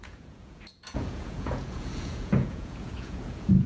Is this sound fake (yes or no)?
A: yes